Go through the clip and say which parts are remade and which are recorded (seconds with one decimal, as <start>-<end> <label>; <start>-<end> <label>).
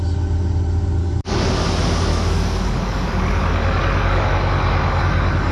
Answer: 0.0-1.0 recorded; 1.0-1.5 remade; 1.5-2.1 recorded; 2.1-5.5 remade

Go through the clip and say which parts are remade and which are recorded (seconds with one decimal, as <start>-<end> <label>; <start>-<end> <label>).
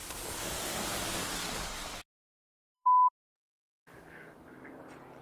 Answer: 0.0-3.1 remade; 3.1-3.9 recorded; 3.9-4.7 remade; 4.7-5.2 recorded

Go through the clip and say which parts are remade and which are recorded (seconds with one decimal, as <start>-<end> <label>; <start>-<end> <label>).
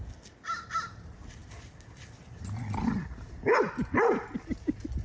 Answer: 0.0-5.0 recorded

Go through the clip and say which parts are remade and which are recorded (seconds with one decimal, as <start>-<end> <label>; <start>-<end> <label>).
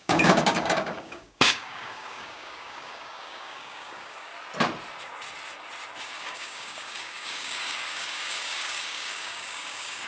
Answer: 0.0-4.3 remade; 4.3-6.0 recorded; 6.0-10.1 remade